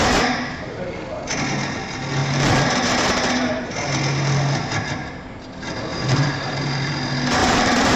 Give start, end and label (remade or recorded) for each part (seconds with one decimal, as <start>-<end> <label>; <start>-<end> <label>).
0.0-5.9 recorded; 5.9-6.9 remade; 6.9-7.4 recorded; 7.4-8.0 remade